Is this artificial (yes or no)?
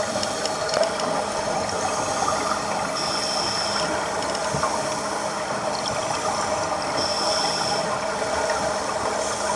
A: no